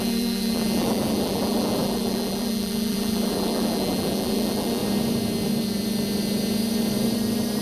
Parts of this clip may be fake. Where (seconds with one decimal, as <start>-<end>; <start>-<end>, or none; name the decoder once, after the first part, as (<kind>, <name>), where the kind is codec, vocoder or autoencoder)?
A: 0.0-4.8 (vocoder, BigVGAN v2)